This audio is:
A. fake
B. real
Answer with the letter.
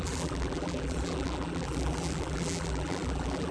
A